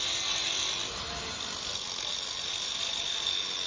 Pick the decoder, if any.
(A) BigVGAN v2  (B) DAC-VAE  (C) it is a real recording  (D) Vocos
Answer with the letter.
C